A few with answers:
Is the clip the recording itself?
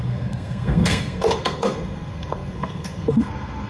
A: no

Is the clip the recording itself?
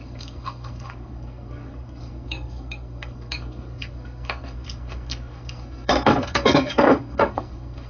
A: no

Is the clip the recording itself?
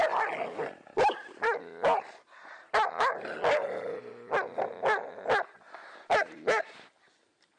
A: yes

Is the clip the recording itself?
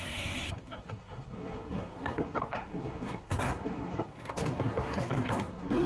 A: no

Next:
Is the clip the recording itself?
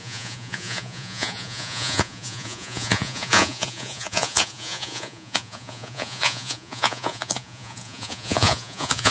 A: no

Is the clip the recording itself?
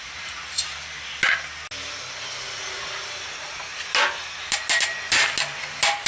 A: yes